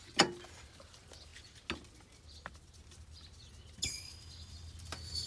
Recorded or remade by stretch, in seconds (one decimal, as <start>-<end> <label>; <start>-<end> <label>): 0.0-5.3 recorded